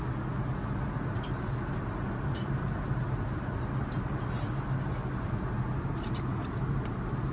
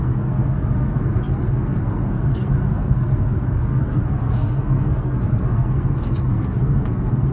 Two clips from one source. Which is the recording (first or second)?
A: first